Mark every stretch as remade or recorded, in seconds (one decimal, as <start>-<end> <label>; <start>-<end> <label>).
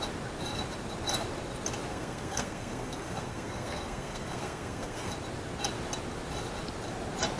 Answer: 0.0-1.9 recorded; 1.9-5.1 remade; 5.1-7.4 recorded